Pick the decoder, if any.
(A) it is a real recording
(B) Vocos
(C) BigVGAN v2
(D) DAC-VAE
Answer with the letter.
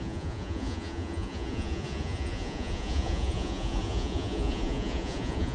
B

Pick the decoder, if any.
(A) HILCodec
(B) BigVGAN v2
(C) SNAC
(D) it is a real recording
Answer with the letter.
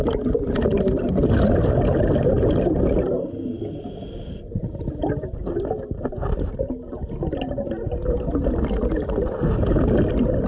D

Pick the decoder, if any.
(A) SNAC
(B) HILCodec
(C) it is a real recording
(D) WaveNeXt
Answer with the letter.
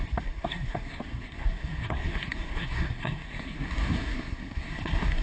A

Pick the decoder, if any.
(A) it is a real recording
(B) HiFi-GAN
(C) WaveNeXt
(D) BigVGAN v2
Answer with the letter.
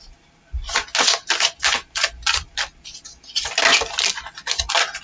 A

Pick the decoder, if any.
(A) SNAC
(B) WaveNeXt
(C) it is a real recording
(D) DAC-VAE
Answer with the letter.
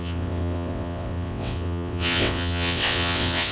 B